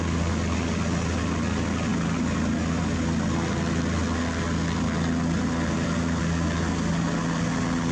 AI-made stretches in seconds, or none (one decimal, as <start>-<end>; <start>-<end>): none